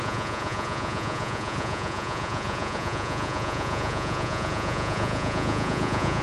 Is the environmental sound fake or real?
fake